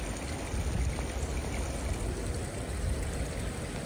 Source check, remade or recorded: recorded